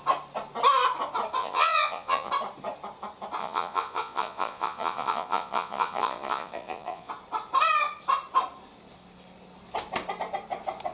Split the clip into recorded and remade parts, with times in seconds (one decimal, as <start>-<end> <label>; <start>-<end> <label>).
0.0-1.4 recorded; 1.4-2.3 remade; 2.3-3.4 recorded; 3.4-7.1 remade; 7.1-10.9 recorded

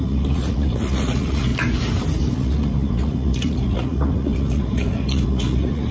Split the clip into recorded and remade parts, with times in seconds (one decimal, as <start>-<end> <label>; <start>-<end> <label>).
0.0-1.5 remade; 1.5-2.2 recorded; 2.2-5.9 remade

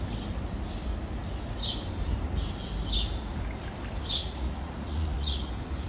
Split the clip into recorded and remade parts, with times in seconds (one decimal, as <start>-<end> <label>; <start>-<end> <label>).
0.0-4.2 recorded; 4.2-5.5 remade; 5.5-5.9 recorded